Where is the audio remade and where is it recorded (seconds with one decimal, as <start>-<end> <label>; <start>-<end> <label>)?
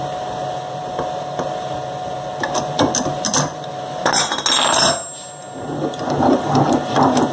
0.0-7.3 recorded